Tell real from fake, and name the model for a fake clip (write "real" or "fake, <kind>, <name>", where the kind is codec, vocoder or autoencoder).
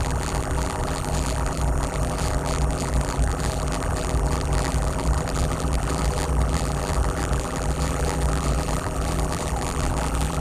fake, vocoder, BigVGAN v2